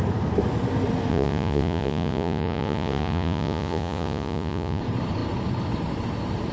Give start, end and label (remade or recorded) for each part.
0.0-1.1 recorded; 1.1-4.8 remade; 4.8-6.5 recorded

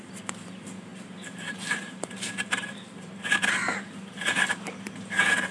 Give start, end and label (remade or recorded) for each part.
0.0-5.5 remade

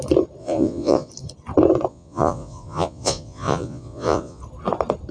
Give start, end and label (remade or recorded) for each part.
0.0-0.4 recorded; 0.4-1.1 remade; 1.1-1.9 recorded; 1.9-4.4 remade; 4.4-5.1 recorded

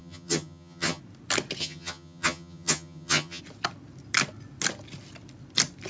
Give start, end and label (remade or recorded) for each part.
0.0-1.0 remade; 1.0-1.6 recorded; 1.6-3.4 remade; 3.4-5.9 recorded

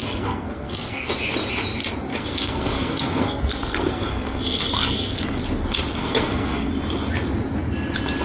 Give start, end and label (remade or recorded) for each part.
0.0-1.1 remade; 1.1-2.1 recorded; 2.1-5.4 remade; 5.4-6.0 recorded; 6.0-6.7 remade; 6.7-8.2 recorded

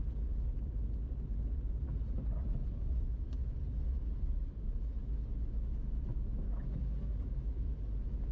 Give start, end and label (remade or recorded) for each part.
0.0-2.4 recorded; 2.4-8.3 remade

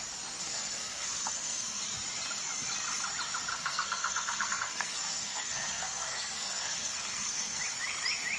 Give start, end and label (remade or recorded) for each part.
0.0-0.4 recorded; 0.4-1.8 remade; 1.8-3.5 recorded; 3.5-7.6 remade; 7.6-8.4 recorded